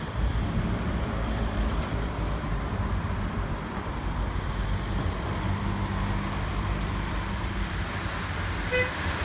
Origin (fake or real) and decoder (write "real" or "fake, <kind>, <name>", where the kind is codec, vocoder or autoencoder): fake, vocoder, BigVGAN v2